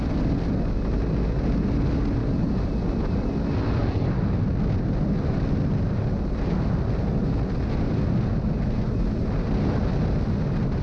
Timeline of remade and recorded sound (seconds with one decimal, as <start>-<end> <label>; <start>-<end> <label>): 0.0-10.8 recorded